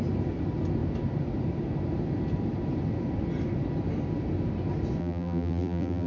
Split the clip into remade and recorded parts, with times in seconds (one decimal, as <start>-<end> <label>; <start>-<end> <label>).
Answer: 0.0-5.0 recorded; 5.0-6.1 remade